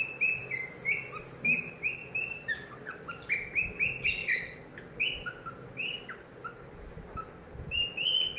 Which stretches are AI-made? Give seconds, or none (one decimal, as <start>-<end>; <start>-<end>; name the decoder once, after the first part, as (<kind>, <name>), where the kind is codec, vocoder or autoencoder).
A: 2.0-3.3 (vocoder, BigVGAN v2)